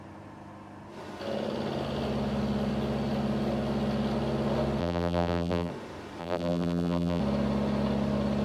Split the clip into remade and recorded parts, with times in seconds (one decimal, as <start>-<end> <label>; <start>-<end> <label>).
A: 0.0-4.8 recorded; 4.8-5.7 remade; 5.7-6.2 recorded; 6.2-7.2 remade; 7.2-8.4 recorded